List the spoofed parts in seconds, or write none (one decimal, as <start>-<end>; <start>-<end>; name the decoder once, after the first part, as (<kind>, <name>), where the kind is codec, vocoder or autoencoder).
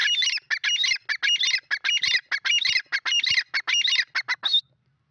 none